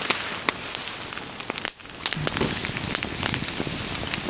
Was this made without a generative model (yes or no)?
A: yes